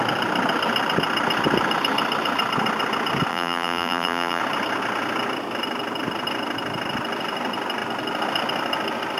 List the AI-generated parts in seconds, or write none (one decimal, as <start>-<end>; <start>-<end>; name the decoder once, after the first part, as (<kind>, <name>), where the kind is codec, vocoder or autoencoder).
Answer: 3.3-4.4 (vocoder, BigVGAN v2)